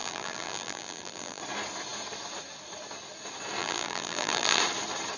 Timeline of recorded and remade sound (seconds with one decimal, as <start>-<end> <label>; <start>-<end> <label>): 0.0-1.4 remade; 1.4-3.6 recorded; 3.6-4.6 remade; 4.6-5.2 recorded